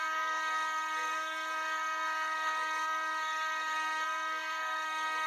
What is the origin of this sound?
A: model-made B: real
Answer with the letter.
A